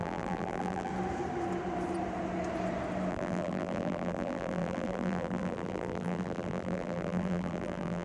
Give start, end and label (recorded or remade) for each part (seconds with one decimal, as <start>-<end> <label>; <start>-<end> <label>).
0.0-0.9 remade; 0.9-3.1 recorded; 3.1-8.0 remade